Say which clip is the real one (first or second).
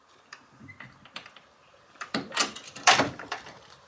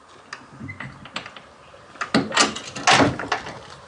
second